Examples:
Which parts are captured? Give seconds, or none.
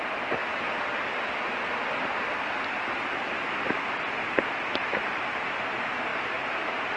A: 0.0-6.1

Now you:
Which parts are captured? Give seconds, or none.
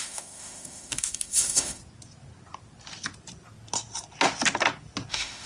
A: 1.8-5.1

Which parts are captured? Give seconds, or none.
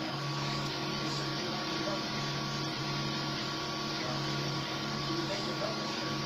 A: 1.3-3.9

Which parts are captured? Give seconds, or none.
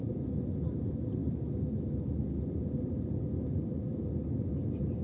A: 0.0-5.0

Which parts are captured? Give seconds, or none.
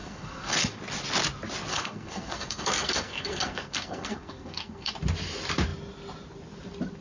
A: 0.6-1.7; 4.9-7.0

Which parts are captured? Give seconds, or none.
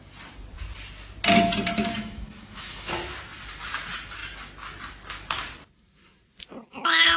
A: 0.0-1.9; 2.9-7.2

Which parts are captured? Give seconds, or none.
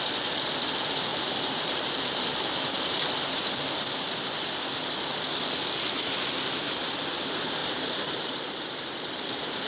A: 0.0-1.1; 3.1-7.6; 9.2-9.7